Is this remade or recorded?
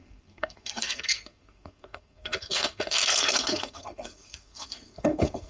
remade